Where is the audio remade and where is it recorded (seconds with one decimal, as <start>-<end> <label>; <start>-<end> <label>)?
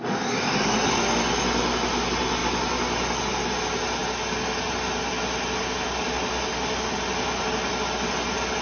0.0-8.6 recorded